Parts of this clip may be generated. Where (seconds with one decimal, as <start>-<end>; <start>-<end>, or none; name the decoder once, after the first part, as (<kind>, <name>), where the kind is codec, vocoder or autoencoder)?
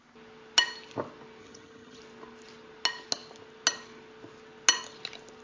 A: 1.4-2.0 (vocoder, HiFi-GAN)